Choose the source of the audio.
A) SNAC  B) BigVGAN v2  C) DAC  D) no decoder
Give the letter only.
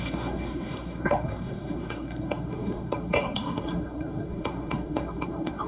A